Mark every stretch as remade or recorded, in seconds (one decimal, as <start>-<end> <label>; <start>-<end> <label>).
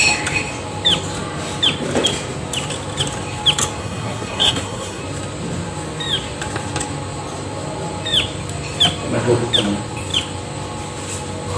0.0-3.8 recorded; 3.8-5.0 remade; 5.0-11.6 recorded